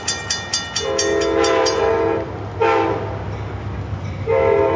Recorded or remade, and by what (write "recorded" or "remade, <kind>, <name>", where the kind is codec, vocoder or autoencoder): recorded